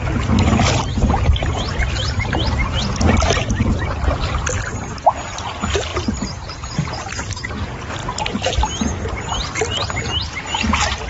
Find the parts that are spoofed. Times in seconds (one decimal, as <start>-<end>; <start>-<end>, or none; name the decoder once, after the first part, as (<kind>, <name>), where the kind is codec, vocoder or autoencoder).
5.9-7.5 (vocoder, BigVGAN v2)